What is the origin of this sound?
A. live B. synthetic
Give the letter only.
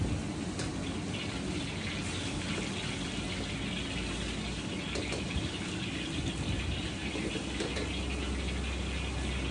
A